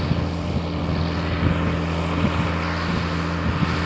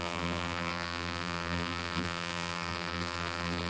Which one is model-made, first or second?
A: second